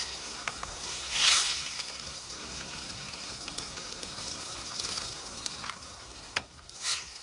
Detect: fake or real fake